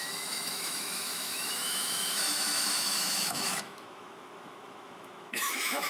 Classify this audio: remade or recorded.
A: remade